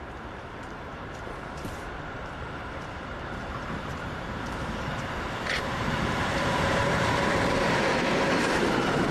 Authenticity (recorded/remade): remade